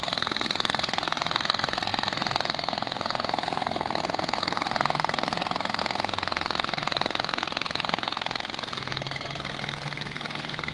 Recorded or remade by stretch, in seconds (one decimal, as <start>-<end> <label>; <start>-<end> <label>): 0.0-10.7 remade